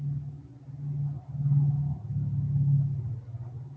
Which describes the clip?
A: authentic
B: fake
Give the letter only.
A